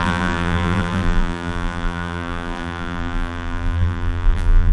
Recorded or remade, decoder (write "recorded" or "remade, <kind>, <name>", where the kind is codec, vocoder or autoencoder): remade, vocoder, BigVGAN v2